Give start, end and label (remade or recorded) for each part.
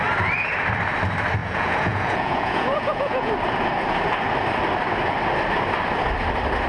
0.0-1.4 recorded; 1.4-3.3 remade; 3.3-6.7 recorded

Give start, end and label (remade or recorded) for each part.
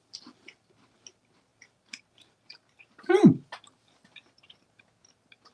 0.0-5.5 recorded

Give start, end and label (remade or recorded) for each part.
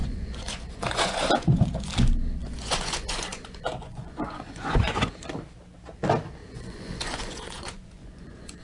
0.0-1.9 remade; 1.9-2.4 recorded; 2.4-5.1 remade; 5.1-6.4 recorded; 6.4-8.6 remade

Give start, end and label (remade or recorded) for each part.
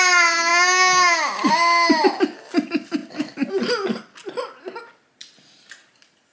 0.0-0.5 recorded; 0.5-1.5 remade; 1.5-6.3 recorded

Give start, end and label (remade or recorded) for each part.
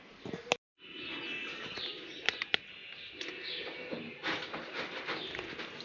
0.0-5.8 recorded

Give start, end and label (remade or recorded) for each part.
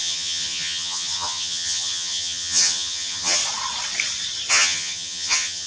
0.0-3.4 remade; 3.4-4.5 recorded; 4.5-5.7 remade